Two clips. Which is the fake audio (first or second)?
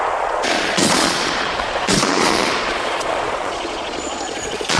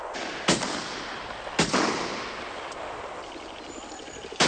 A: first